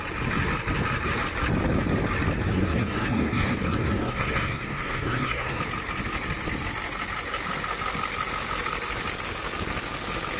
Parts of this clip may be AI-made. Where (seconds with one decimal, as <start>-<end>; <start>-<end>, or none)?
2.5-5.6